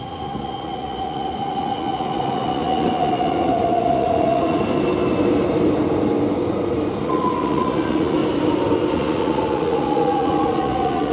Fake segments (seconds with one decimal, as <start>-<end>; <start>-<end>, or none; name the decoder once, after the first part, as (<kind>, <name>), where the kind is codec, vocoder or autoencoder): 0.0-4.6 (vocoder, Vocos); 7.0-8.2; 8.9-11.1